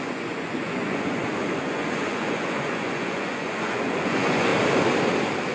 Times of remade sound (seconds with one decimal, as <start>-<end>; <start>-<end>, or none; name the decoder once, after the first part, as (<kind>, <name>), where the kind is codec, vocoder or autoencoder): 0.0-4.5 (vocoder, Vocos)